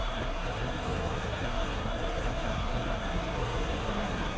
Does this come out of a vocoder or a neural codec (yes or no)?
yes